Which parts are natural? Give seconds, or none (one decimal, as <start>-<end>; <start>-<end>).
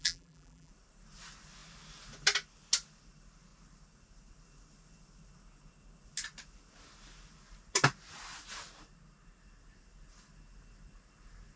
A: 0.7-11.6